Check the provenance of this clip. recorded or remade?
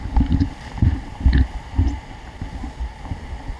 recorded